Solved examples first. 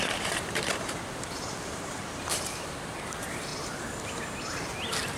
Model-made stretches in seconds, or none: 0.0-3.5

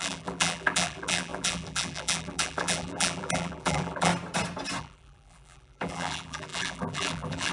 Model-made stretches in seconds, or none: 0.0-4.1; 4.8-7.5